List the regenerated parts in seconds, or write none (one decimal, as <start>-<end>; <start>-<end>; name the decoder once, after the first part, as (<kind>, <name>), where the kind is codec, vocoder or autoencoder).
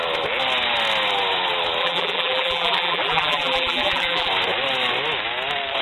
1.8-4.3 (vocoder, BigVGAN v2)